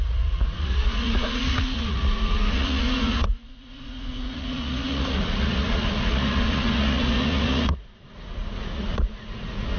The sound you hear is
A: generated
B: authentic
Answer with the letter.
A